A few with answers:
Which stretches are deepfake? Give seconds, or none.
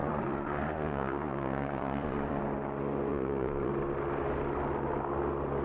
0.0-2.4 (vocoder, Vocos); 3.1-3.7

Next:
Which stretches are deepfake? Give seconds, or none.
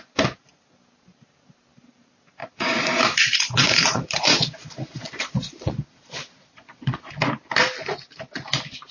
2.4-7.1 (vocoder, Vocos)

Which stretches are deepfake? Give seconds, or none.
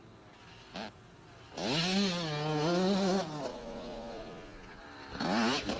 3.5-4.8 (vocoder, Vocos)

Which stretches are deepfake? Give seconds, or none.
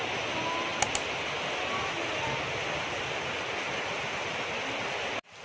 none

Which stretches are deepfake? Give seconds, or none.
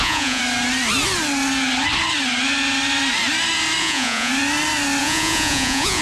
0.0-0.4 (vocoder, Vocos); 3.8-4.3; 5.0-6.0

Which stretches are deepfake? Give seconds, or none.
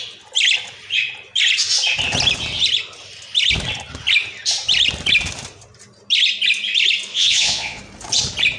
7.1-7.8 (vocoder, Vocos)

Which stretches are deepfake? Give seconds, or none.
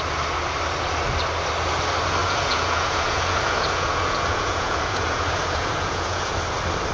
2.2-6.3 (vocoder, Vocos)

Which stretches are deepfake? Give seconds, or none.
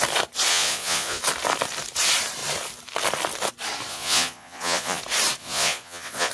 0.5-1.2 (vocoder, Vocos); 3.9-5.0; 5.4-6.3